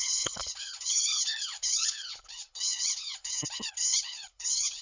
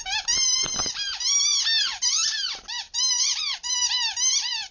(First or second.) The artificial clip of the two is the first